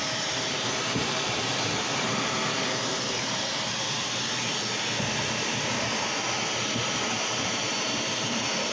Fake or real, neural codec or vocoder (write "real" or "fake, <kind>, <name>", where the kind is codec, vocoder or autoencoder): fake, vocoder, BigVGAN v2